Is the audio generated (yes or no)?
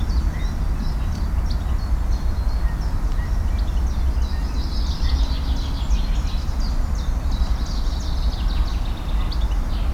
no